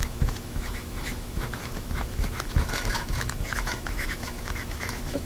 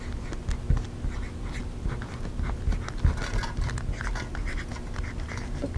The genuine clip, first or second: second